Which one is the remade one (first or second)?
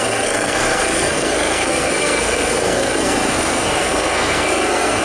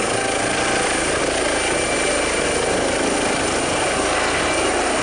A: first